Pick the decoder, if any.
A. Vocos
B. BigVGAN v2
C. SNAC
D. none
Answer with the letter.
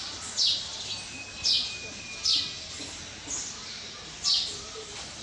D